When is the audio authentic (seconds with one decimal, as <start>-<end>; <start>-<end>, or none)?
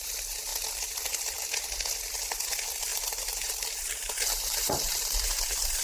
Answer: 0.0-2.9